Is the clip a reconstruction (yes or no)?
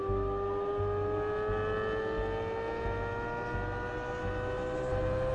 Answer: no